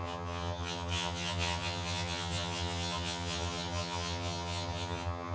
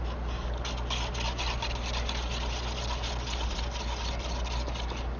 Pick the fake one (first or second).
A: first